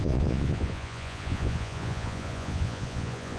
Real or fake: fake